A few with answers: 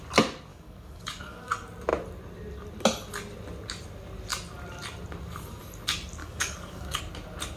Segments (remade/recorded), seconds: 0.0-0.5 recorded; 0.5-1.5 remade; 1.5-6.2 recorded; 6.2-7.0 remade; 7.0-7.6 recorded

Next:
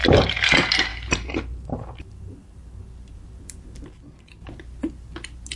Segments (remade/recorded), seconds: 0.0-0.5 remade; 0.5-0.9 recorded; 0.9-2.6 remade; 2.6-5.6 recorded

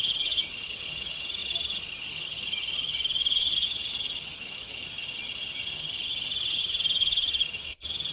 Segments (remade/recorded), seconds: 0.0-8.1 remade

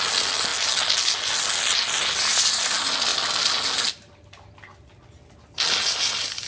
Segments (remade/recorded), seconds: 0.0-6.5 recorded